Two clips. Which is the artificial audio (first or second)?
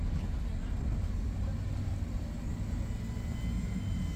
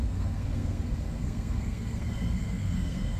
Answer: second